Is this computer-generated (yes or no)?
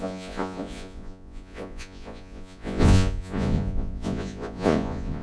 yes